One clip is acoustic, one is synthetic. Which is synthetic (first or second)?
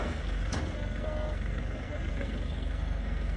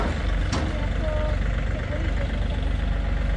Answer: first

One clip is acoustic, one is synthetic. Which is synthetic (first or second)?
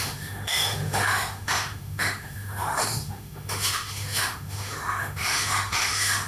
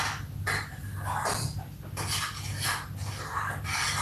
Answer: first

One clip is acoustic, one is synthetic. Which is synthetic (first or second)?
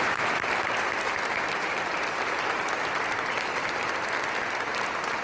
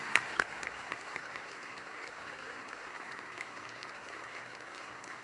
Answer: second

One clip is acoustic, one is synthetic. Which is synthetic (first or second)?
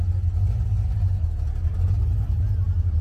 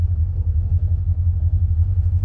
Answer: second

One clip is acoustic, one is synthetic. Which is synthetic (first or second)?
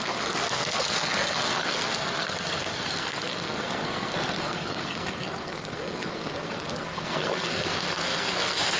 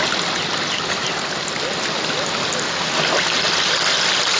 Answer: first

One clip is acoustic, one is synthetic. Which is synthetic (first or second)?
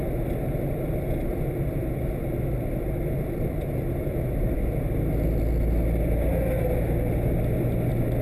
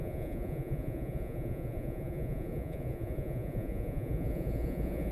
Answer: second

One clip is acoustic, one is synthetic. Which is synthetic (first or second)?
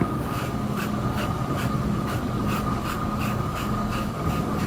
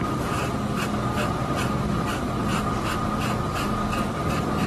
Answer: first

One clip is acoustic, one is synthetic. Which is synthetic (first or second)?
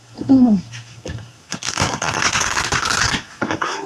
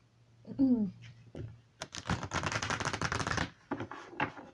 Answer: first